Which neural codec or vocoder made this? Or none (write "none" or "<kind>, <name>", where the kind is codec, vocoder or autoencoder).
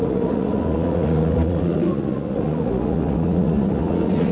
vocoder, Vocos